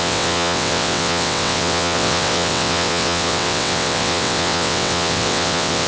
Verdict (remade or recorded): remade